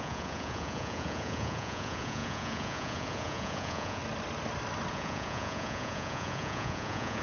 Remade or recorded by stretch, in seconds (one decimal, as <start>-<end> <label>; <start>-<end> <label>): 0.0-4.0 remade; 4.0-4.9 recorded; 4.9-7.2 remade